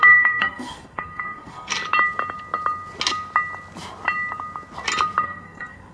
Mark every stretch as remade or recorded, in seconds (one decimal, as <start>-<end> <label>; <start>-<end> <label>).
0.0-1.7 remade; 1.7-5.2 recorded; 5.2-5.9 remade